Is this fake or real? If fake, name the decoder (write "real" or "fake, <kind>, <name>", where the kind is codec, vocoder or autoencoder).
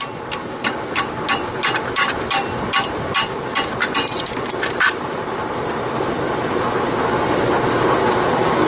real